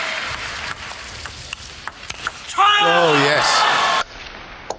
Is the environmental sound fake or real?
real